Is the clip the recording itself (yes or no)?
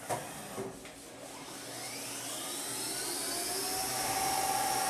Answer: yes